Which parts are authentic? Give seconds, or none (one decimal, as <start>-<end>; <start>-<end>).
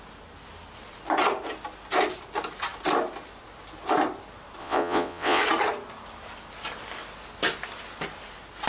0.0-4.6; 5.4-8.7